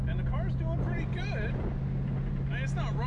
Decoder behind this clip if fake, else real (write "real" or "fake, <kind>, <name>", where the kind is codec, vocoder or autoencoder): real